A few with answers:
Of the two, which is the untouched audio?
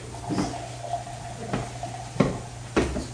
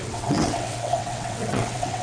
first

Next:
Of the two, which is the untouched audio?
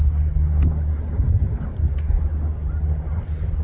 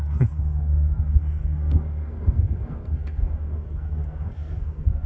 first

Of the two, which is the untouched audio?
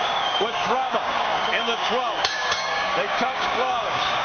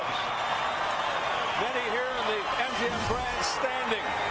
second